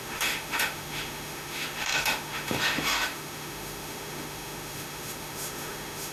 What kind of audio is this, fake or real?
fake